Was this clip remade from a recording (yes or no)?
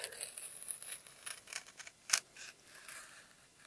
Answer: no